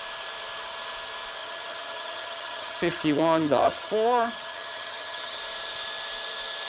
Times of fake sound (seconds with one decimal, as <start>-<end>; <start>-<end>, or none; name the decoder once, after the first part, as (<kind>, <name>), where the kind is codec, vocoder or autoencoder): 1.4-5.4 (vocoder, HiFi-GAN)

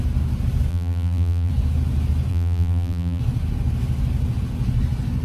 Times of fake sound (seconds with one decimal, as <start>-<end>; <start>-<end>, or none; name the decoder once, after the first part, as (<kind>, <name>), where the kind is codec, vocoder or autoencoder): 0.7-1.5 (vocoder, BigVGAN v2); 2.3-3.2

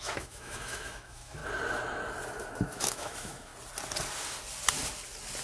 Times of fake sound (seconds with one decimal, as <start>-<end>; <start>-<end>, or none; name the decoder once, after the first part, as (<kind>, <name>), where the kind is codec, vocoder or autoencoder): 0.0-1.4 (autoencoder, DAC-VAE); 2.4-3.5

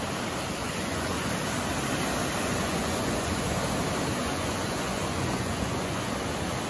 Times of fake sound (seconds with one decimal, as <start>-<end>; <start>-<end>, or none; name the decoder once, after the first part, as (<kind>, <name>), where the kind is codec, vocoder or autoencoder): 0.6-1.3 (vocoder, Vocos); 2.4-3.6; 4.2-6.1

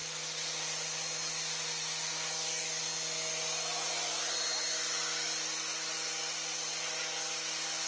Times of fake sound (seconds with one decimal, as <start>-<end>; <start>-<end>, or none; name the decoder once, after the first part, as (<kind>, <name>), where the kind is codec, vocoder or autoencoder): none

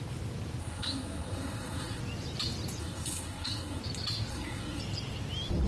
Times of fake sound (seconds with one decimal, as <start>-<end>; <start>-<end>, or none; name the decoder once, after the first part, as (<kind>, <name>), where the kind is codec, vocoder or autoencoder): 0.6-2.0 (codec, SNAC); 2.8-3.8; 4.3-4.8

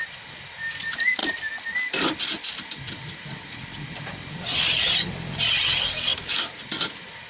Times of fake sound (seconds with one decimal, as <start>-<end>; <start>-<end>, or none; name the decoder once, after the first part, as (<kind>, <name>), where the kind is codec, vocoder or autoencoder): 0.7-1.2 (vocoder, BigVGAN v2); 2.2-7.3